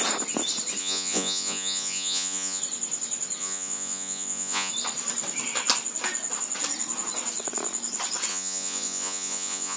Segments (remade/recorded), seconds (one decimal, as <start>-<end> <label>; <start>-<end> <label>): 0.0-0.8 recorded; 0.8-2.6 remade; 2.6-3.4 recorded; 3.4-4.7 remade; 4.7-8.3 recorded; 8.3-9.8 remade